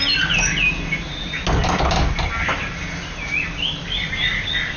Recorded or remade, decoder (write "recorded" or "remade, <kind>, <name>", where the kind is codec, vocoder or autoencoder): recorded